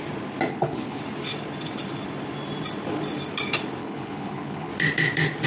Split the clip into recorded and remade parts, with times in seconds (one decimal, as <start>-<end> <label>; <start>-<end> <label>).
0.0-0.5 recorded; 0.5-1.0 remade; 1.0-3.8 recorded; 3.8-4.7 remade; 4.7-5.5 recorded